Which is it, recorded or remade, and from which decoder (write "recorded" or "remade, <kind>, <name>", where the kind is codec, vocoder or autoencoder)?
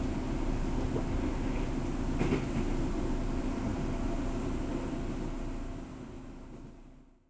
recorded